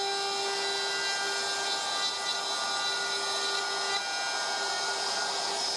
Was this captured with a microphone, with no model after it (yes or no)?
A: yes